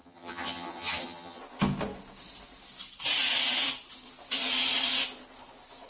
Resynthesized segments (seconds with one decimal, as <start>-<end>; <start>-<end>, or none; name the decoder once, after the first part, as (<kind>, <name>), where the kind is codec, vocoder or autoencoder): 0.0-1.4 (vocoder, HiFi-GAN)